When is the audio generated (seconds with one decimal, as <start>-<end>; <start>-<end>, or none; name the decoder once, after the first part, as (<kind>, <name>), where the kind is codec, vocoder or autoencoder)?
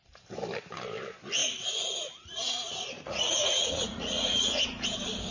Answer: 1.4-4.6 (vocoder, Vocos)